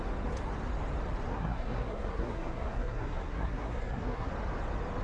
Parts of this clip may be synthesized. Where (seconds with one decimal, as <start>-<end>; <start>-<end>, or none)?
1.3-4.3